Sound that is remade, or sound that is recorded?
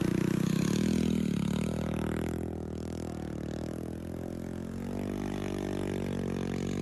recorded